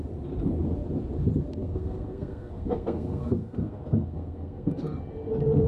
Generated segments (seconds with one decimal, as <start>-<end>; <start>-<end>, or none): 1.6-5.0